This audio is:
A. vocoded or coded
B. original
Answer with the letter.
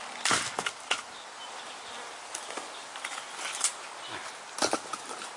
B